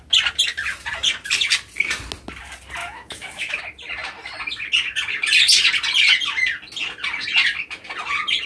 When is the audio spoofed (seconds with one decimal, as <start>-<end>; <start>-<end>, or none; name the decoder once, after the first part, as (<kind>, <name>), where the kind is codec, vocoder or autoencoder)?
2.8-3.6 (autoencoder, DAC-VAE)